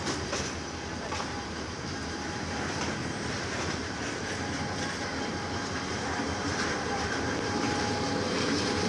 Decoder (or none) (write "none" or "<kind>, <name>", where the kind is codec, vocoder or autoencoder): vocoder, BigVGAN v2